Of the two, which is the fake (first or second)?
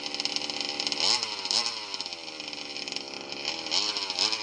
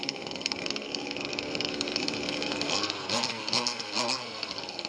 second